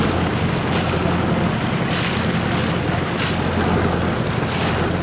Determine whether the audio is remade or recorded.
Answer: recorded